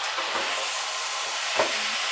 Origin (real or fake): real